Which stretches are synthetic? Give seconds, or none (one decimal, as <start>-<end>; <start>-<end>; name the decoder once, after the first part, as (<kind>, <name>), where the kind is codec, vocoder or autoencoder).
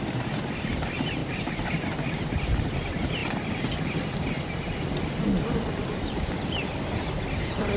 1.2-2.1 (vocoder, BigVGAN v2)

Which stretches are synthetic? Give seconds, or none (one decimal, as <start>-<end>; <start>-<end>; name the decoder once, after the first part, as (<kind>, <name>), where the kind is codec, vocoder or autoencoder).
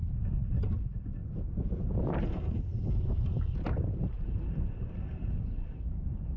1.2-5.0 (vocoder, BigVGAN v2)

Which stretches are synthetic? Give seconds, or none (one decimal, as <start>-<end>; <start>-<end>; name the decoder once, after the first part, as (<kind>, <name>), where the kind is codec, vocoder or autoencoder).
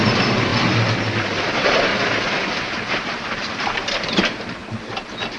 0.0-0.5 (vocoder, BigVGAN v2); 1.5-1.9; 2.9-4.6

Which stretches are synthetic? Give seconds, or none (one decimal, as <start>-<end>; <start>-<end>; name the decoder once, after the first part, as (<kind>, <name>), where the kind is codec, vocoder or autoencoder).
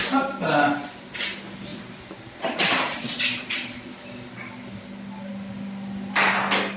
1.7-3.5 (vocoder, BigVGAN v2)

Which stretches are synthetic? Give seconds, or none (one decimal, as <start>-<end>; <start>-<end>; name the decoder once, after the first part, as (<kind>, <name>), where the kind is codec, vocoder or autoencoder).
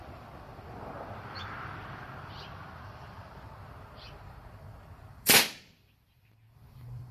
0.0-7.1 (vocoder, BigVGAN v2)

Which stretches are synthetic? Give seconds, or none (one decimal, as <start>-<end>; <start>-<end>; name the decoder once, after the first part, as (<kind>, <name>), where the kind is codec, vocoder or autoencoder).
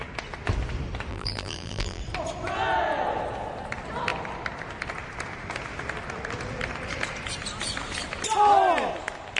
1.1-2.0 (vocoder, BigVGAN v2)